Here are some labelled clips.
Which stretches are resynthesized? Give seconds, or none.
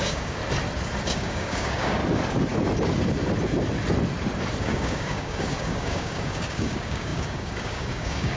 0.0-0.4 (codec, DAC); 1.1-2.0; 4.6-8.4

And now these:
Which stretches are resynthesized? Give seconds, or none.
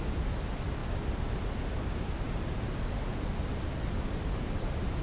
none